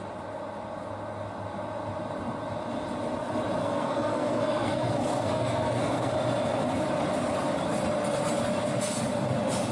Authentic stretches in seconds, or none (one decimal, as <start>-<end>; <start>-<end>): 0.0-3.6; 6.1-9.7